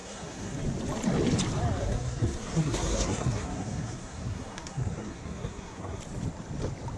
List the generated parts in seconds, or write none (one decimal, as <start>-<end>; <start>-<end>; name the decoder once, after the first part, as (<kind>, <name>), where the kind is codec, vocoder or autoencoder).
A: 0.0-0.6 (codec, SNAC); 1.8-6.0